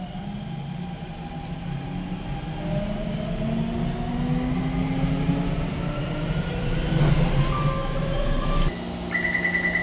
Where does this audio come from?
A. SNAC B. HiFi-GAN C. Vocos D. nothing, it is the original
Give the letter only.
D